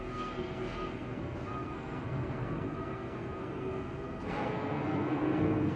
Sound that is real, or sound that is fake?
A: fake